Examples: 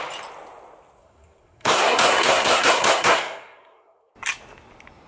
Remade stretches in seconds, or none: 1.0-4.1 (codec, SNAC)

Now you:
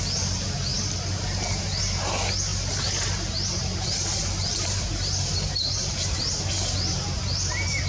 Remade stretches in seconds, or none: 0.7-1.8 (vocoder, BigVGAN v2); 2.5-6.4

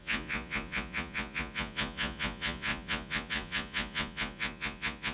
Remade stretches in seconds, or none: 0.0-5.1 (vocoder, Vocos)

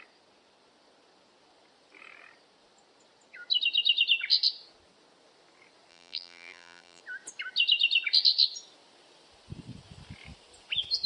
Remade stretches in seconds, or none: 5.9-7.0 (vocoder, BigVGAN v2)

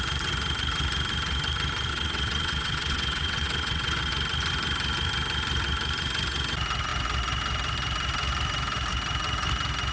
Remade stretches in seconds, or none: 1.9-4.1 (vocoder, WaveNeXt)

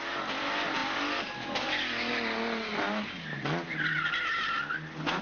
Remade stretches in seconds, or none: none